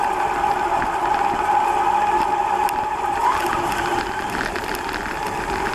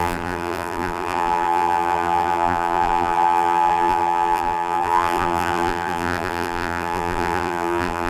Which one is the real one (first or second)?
first